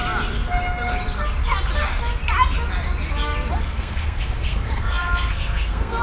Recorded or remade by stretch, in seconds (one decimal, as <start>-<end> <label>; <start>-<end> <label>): 0.0-3.6 recorded; 3.6-6.0 remade